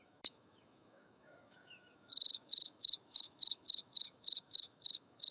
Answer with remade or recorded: remade